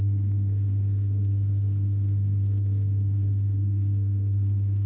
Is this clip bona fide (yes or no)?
no